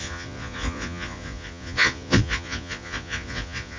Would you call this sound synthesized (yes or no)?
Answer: yes